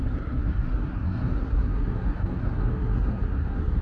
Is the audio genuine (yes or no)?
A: no